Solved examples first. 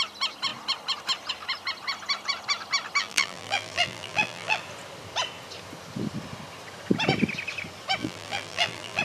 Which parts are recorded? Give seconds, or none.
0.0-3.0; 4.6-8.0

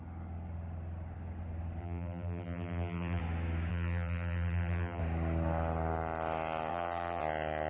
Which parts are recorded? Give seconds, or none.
0.0-1.8; 3.2-3.7; 5.0-6.7; 7.2-7.7

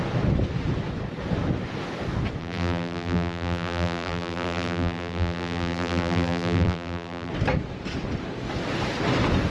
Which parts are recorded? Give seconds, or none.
0.0-2.4; 7.3-9.5